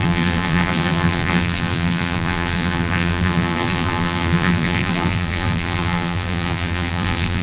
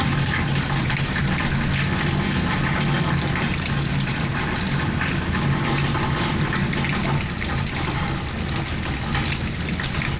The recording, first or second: second